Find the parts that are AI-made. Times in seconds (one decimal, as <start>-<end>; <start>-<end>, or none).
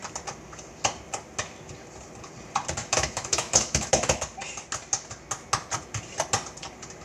2.8-4.2